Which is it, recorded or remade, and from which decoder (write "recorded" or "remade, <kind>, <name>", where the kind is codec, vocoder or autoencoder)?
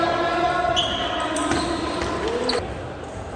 recorded